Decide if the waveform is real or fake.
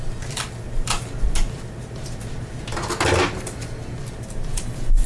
real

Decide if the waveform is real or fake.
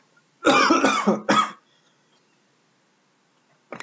real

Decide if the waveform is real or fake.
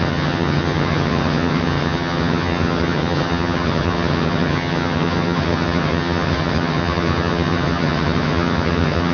fake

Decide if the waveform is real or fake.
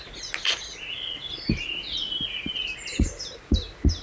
real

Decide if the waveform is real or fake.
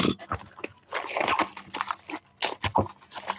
real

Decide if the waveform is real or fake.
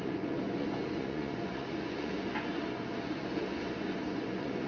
fake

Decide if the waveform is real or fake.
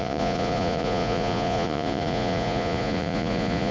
fake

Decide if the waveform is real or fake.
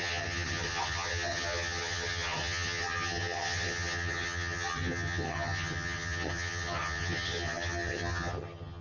fake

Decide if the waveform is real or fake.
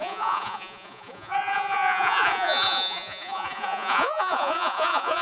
fake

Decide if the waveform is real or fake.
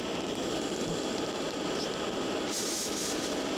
real